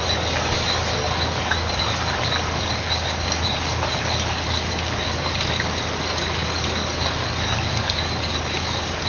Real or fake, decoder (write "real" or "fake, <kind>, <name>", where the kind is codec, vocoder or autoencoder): fake, codec, DAC